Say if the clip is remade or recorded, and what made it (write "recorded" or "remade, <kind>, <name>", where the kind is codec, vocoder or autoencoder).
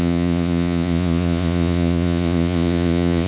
remade, vocoder, Vocos